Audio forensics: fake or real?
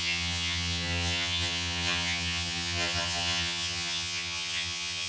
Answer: fake